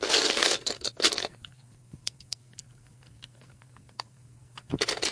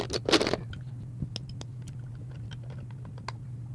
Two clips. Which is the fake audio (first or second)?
first